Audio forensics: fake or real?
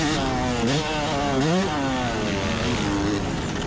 real